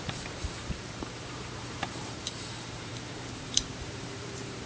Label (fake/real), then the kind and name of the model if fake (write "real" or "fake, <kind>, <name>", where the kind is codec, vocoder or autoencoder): fake, vocoder, BigVGAN v2